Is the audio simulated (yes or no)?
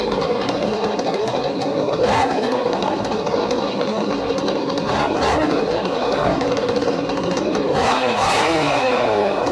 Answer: yes